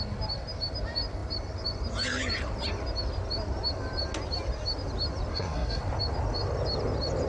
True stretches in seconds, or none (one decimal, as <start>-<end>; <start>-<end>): 0.0-5.3; 5.8-7.3